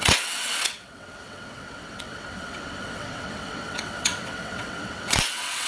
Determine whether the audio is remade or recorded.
remade